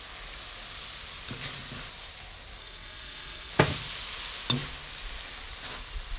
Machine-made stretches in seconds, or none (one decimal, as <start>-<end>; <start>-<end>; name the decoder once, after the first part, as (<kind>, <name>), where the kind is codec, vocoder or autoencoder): 2.6-3.5 (codec, SNAC)